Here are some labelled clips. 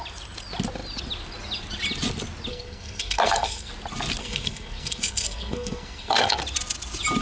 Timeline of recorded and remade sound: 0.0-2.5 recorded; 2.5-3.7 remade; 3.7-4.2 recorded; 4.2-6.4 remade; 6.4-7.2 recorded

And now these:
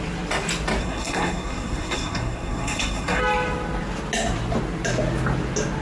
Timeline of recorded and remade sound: 0.0-0.8 recorded; 0.8-3.2 remade; 3.2-5.8 recorded

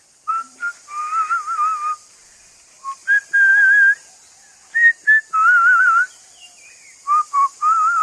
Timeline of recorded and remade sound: 0.0-1.0 remade; 1.0-2.8 recorded; 2.8-3.5 remade; 3.5-5.8 recorded; 5.8-8.0 remade